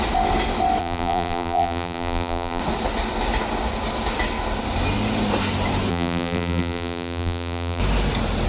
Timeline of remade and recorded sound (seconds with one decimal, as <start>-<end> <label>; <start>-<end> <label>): 0.0-0.8 recorded; 0.8-2.6 remade; 2.6-5.9 recorded; 5.9-7.8 remade; 7.8-8.5 recorded